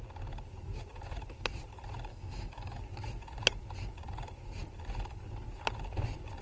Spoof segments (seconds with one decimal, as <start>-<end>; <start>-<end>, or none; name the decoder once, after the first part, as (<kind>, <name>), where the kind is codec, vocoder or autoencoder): 2.1-2.8 (autoencoder, DAC-VAE)